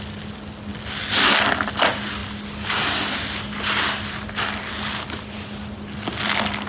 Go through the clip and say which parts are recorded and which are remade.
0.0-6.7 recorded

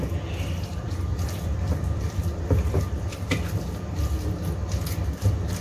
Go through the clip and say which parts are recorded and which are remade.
0.0-0.7 recorded; 0.7-4.1 remade; 4.1-5.6 recorded

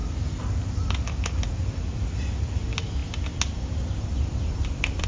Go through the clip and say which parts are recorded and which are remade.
0.0-5.1 recorded

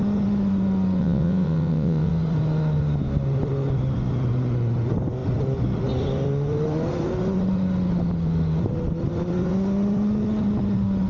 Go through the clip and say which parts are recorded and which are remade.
0.0-1.0 recorded; 1.0-2.1 remade; 2.1-11.1 recorded

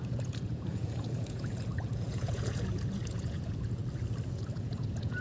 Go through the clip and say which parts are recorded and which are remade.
0.0-3.8 remade; 3.8-4.3 recorded; 4.3-5.2 remade

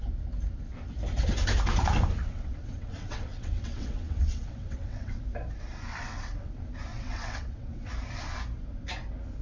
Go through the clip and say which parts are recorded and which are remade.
0.0-2.2 recorded; 2.2-5.2 remade; 5.2-5.9 recorded; 5.9-6.5 remade; 6.5-6.9 recorded; 6.9-7.9 remade; 7.9-9.4 recorded